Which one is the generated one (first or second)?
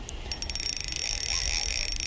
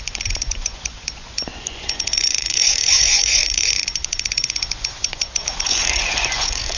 second